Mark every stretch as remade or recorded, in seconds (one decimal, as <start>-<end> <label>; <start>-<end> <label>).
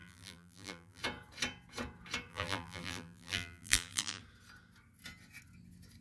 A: 0.0-1.0 remade; 1.0-2.3 recorded; 2.3-4.2 remade; 4.2-6.0 recorded